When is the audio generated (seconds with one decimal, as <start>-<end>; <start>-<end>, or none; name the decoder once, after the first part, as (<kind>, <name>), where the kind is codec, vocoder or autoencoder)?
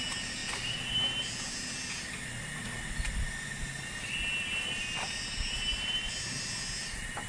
none